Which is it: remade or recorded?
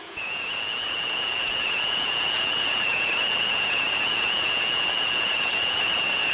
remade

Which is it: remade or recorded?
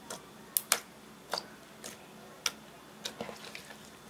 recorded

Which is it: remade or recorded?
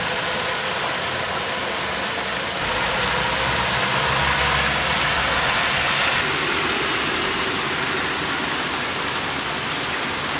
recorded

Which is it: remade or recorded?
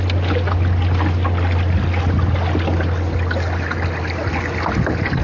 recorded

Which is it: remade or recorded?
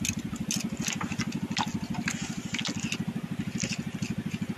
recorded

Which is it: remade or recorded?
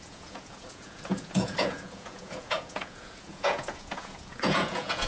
remade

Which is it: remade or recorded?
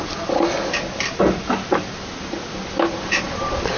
recorded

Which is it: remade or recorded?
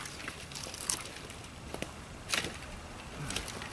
recorded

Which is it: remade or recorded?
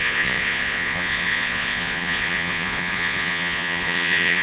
remade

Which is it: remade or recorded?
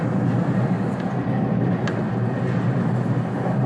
recorded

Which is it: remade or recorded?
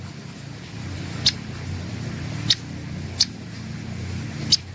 recorded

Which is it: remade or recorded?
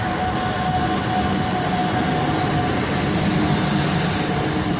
recorded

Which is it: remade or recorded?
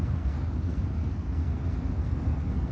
remade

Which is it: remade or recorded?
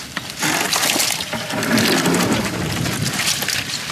recorded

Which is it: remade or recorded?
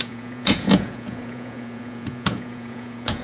remade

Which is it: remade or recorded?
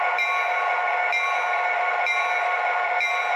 recorded